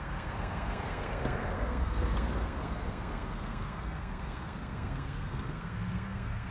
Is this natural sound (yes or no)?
no